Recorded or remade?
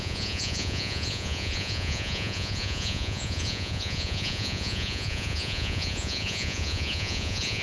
remade